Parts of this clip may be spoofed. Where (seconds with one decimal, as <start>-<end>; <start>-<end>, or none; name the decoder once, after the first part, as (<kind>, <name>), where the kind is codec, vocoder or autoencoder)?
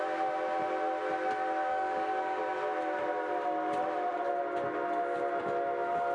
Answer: 1.7-2.4 (codec, DAC)